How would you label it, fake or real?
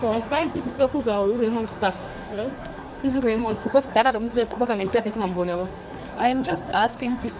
fake